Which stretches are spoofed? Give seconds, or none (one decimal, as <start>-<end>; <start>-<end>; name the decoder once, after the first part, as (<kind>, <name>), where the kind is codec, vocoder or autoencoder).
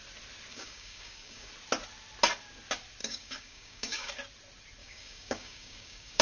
0.5-1.5 (codec, DAC); 3.0-4.1; 4.8-6.2